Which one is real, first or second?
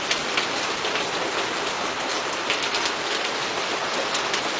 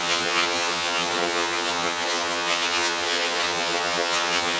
first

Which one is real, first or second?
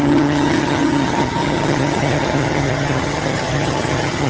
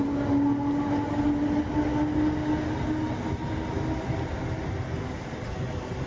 second